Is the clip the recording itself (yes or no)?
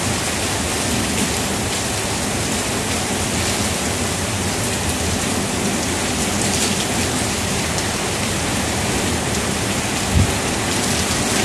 yes